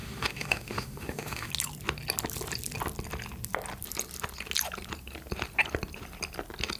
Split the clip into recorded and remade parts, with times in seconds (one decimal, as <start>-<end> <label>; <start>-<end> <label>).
0.0-1.5 remade; 1.5-6.8 recorded